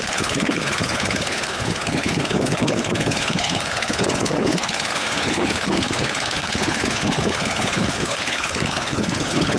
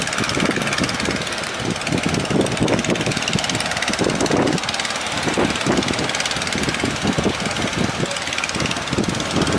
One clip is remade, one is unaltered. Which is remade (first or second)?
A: first